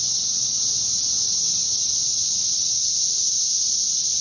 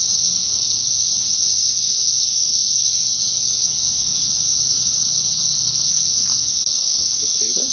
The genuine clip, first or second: first